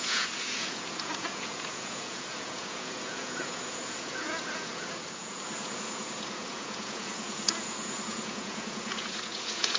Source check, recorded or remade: remade